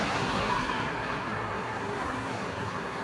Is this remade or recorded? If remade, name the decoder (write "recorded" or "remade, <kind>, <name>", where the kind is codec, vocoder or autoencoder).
remade, codec, SNAC